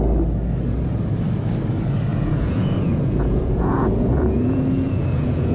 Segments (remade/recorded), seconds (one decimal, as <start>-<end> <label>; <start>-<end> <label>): 0.0-2.1 recorded; 2.1-5.5 remade